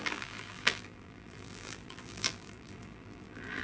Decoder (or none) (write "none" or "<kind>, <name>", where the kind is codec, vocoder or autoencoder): vocoder, BigVGAN v2